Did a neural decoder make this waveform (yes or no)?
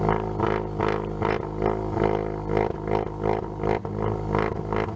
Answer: no